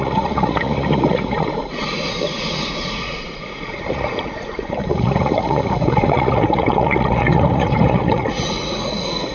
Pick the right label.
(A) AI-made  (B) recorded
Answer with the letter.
A